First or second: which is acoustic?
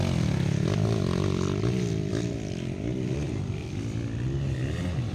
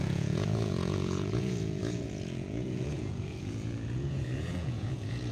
first